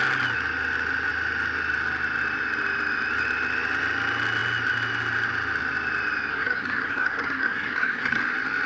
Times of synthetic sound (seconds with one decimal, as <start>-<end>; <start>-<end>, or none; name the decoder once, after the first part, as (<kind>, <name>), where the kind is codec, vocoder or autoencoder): 6.3-8.2 (codec, SNAC)

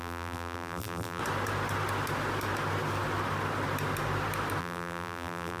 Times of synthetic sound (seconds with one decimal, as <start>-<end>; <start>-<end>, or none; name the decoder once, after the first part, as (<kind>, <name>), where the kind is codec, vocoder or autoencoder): 0.0-1.2 (vocoder, BigVGAN v2); 4.6-5.6

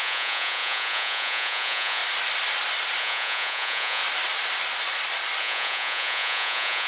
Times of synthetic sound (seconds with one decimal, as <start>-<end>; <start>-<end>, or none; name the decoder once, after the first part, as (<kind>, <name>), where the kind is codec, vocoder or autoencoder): 0.0-2.0 (vocoder, Vocos); 3.0-4.0; 5.4-6.9

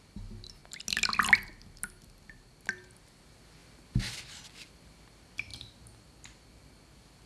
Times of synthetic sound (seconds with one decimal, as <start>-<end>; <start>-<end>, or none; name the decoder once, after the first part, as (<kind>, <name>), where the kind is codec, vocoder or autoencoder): none

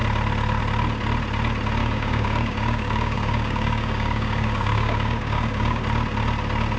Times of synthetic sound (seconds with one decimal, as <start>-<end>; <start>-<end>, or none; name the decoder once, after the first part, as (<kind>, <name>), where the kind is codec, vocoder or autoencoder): 1.8-5.8 (codec, DAC)